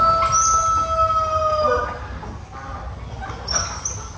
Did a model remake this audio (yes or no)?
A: no